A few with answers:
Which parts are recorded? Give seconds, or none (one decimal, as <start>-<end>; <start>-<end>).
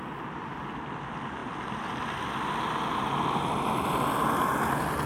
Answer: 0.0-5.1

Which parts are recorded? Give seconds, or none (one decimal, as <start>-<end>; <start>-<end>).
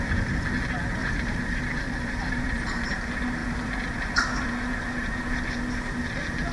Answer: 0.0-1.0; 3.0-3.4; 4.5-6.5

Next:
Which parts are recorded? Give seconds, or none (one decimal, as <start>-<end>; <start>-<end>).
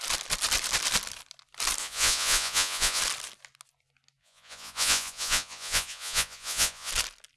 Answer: 0.0-1.8; 3.0-4.2; 6.9-7.4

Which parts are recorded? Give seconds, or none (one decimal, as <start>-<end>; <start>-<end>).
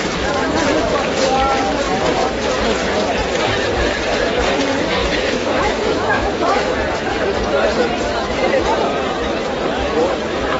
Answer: 0.0-5.0; 6.7-10.6